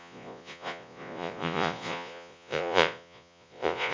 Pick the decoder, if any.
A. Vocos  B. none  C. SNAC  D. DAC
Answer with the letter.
A